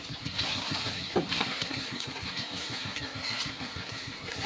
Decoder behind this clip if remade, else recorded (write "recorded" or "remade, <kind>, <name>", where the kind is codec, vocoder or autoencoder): remade, codec, SNAC